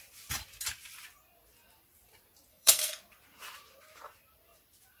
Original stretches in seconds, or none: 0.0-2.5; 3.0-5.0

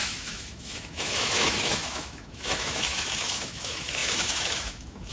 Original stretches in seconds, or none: none

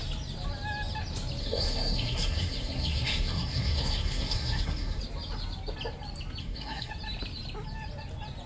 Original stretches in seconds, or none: 0.0-1.4; 5.0-6.4; 6.9-8.5